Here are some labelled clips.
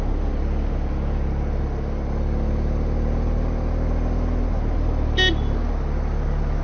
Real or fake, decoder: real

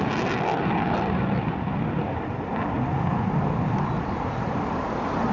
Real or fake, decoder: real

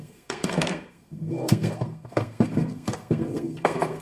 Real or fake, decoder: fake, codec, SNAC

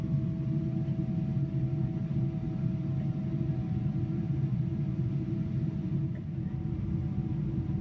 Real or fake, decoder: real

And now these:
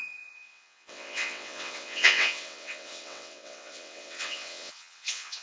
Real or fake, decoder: fake, vocoder, WaveNeXt